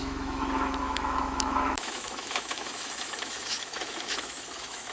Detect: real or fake fake